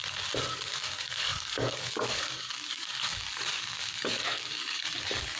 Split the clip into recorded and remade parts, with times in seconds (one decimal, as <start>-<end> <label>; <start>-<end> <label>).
0.0-0.5 recorded; 0.5-5.4 remade